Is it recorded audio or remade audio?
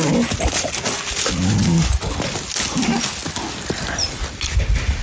recorded